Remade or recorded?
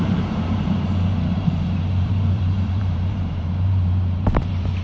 remade